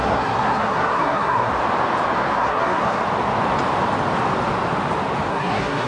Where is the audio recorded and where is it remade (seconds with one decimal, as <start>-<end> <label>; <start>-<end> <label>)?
0.0-1.5 remade; 1.5-2.4 recorded; 2.4-3.0 remade; 3.0-5.3 recorded; 5.3-5.9 remade